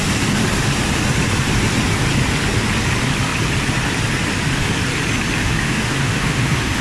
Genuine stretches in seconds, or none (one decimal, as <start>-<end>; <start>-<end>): 0.0-5.4